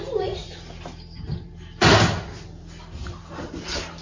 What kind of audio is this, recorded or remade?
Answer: recorded